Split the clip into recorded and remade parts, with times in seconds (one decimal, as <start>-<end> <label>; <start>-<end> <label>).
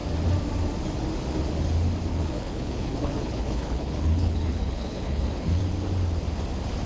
0.0-2.1 recorded; 2.1-5.6 remade; 5.6-6.9 recorded